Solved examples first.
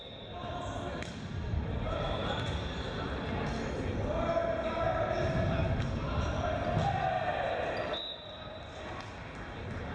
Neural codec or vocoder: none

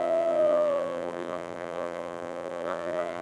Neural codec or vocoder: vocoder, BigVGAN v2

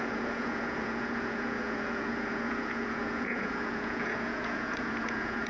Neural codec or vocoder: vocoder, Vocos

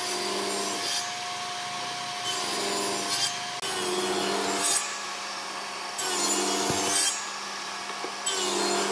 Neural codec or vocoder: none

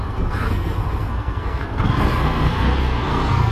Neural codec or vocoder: codec, SNAC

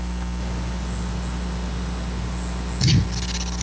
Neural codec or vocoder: none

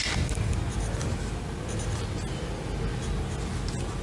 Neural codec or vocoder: none